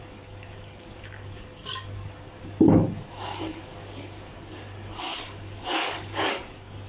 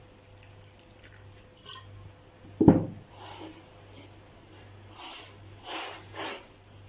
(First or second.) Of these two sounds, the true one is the second